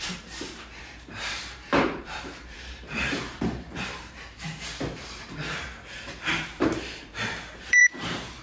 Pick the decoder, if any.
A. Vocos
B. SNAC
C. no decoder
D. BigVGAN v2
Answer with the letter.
D